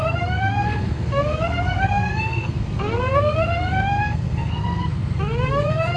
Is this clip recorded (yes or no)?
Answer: no